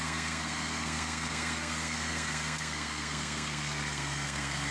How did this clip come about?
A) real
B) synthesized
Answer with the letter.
B